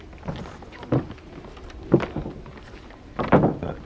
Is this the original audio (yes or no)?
yes